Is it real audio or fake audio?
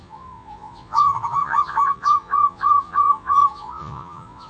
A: fake